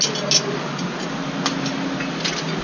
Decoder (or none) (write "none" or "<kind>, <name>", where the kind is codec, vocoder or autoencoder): none